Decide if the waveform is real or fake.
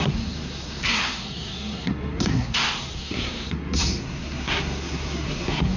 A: fake